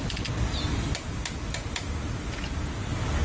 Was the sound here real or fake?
real